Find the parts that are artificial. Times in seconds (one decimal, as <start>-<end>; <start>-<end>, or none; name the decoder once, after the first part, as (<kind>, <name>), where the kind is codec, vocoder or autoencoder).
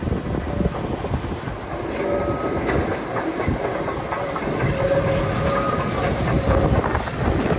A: none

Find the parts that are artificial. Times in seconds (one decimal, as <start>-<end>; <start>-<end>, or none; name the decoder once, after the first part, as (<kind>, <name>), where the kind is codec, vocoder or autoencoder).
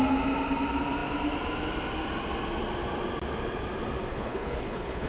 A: 4.1-5.1 (codec, HILCodec)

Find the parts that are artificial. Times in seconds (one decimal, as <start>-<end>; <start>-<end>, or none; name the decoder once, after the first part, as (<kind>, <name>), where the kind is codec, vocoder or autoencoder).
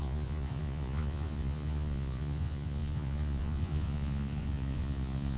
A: 0.0-5.4 (vocoder, Vocos)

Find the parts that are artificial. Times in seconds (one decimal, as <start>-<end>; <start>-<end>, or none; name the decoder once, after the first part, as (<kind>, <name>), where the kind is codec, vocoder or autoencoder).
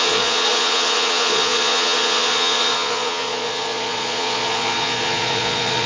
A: 0.0-5.9 (vocoder, Vocos)